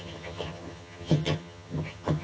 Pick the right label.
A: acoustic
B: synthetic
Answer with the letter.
B